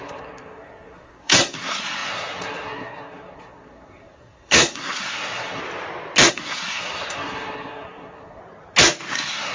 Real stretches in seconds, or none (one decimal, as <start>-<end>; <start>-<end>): 5.6-6.3; 8.4-9.1